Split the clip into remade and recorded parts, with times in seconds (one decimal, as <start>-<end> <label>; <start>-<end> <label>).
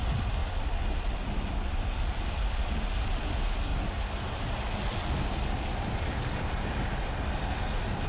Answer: 0.0-3.7 remade; 3.7-5.6 recorded; 5.6-8.1 remade